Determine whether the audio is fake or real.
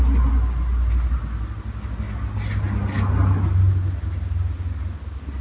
real